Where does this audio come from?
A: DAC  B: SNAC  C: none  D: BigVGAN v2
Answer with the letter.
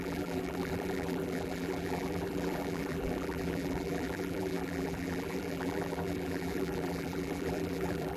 D